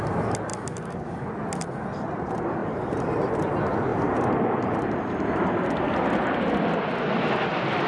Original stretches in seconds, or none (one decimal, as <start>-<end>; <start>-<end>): 0.0-2.6; 3.3-3.9; 5.7-7.9